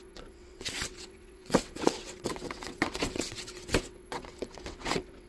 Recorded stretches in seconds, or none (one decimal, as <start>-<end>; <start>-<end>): none